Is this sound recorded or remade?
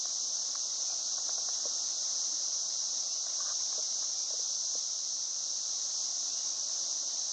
recorded